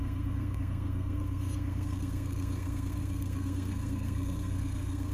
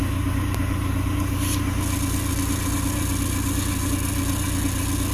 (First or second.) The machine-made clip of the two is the first